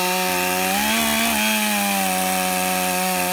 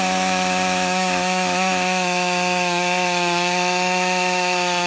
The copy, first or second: second